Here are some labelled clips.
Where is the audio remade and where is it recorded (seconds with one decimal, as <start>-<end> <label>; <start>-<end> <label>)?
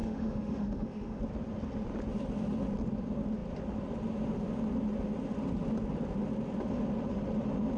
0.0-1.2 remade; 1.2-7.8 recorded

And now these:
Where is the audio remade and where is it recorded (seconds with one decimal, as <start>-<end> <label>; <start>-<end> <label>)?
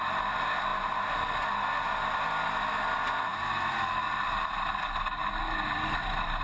0.0-6.4 recorded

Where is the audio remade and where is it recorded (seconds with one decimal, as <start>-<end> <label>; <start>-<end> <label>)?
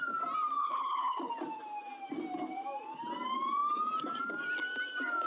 0.0-0.6 recorded; 0.6-1.3 remade; 1.3-5.3 recorded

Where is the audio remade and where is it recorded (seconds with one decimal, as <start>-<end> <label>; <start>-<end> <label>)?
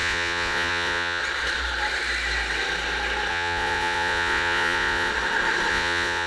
0.0-1.2 remade; 1.2-3.3 recorded; 3.3-5.1 remade; 5.1-5.7 recorded; 5.7-6.3 remade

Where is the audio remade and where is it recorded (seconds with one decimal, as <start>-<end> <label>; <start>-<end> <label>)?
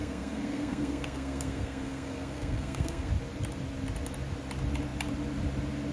0.0-3.1 remade; 3.1-5.9 recorded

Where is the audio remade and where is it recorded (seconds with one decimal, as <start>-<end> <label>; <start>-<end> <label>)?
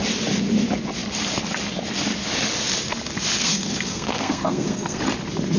0.0-3.4 recorded; 3.4-5.0 remade; 5.0-5.6 recorded